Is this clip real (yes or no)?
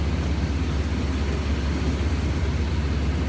yes